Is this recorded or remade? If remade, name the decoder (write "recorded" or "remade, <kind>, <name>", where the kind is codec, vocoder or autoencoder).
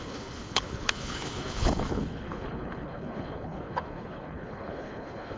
remade, codec, HILCodec